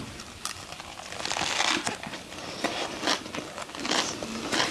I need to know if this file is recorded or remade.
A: recorded